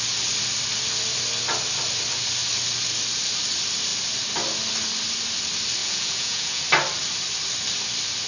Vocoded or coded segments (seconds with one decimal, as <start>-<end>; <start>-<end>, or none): 5.8-6.6